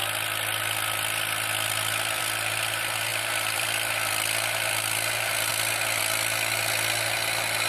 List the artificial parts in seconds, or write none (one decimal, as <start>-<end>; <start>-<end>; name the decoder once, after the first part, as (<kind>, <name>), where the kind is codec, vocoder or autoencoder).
3.1-4.1 (vocoder, BigVGAN v2)